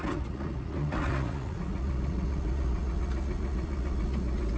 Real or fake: fake